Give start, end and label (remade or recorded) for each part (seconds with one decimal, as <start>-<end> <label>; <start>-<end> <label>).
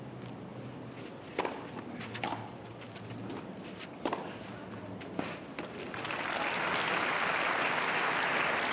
0.0-8.7 recorded